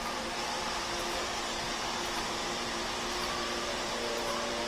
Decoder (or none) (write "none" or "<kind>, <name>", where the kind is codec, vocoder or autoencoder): vocoder, BigVGAN v2